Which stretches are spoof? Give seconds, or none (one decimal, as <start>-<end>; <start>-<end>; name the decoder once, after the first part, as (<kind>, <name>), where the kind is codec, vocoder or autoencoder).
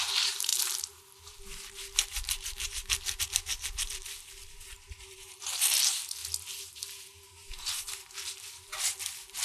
0.0-6.2 (vocoder, BigVGAN v2); 6.7-9.4